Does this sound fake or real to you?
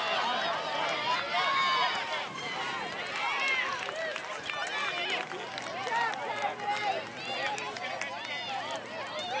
real